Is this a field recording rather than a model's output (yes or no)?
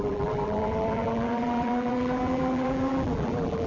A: no